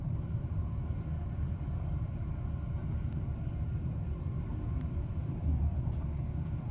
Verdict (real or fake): real